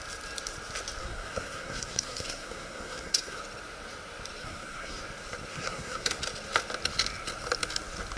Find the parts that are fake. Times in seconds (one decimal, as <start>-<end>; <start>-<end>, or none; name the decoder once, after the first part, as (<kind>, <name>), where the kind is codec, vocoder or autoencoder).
1.0-3.4 (codec, SNAC); 4.4-5.0; 5.5-6.2